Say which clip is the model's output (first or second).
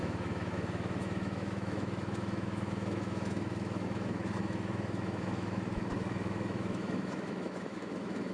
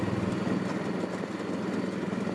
first